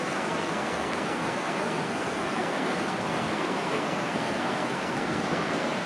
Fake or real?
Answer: fake